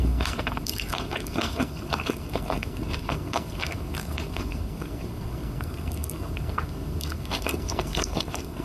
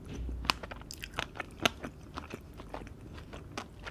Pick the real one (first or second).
second